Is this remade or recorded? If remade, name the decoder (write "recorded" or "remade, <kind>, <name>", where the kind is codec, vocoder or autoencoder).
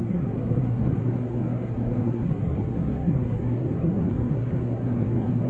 remade, codec, SNAC